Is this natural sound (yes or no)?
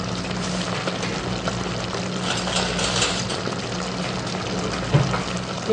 yes